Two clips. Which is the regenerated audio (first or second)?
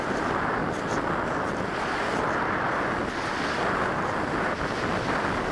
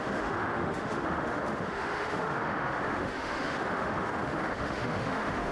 second